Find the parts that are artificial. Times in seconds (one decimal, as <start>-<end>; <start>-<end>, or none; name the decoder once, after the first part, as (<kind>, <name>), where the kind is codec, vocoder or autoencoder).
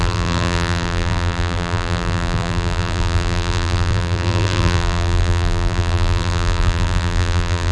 0.0-7.7 (vocoder, BigVGAN v2)